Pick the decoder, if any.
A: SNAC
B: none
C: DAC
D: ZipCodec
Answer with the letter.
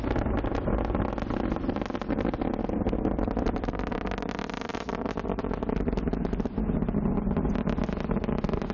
B